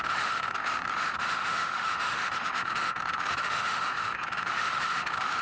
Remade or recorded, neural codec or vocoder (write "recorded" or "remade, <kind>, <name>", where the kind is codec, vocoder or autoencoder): remade, autoencoder, DAC-VAE